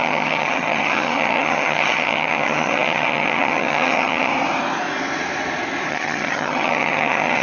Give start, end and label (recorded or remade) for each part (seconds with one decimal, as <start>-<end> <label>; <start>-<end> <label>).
0.0-4.3 remade; 4.3-5.9 recorded; 5.9-7.4 remade

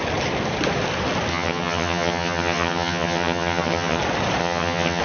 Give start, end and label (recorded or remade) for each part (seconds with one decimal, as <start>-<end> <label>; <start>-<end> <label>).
0.0-1.3 recorded; 1.3-4.0 remade; 4.0-4.4 recorded; 4.4-5.0 remade

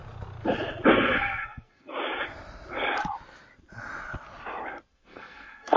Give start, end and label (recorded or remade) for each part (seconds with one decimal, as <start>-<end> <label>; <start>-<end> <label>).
0.0-0.9 recorded; 0.9-1.9 remade; 1.9-4.9 recorded; 4.9-5.8 remade

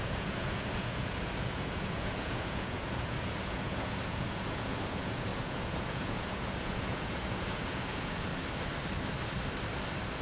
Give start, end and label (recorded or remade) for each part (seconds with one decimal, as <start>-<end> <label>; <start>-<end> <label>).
0.0-8.3 remade; 8.3-10.2 recorded

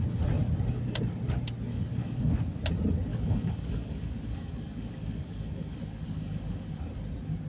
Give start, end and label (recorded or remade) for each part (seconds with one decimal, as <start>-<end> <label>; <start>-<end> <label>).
0.0-1.7 recorded; 1.7-2.3 remade; 2.3-3.1 recorded; 3.1-6.8 remade; 6.8-7.5 recorded

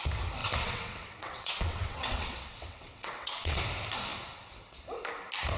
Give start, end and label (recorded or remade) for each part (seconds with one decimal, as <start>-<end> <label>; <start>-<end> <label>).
0.0-0.4 recorded; 0.4-3.6 remade; 3.6-5.6 recorded

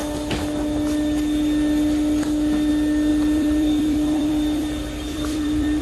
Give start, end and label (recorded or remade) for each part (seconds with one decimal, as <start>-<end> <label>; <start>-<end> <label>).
0.0-3.1 recorded; 3.1-5.8 remade